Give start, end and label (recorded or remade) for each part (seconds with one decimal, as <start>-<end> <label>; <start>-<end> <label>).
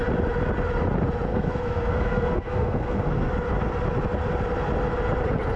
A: 0.0-1.3 recorded; 1.3-3.3 remade; 3.3-5.6 recorded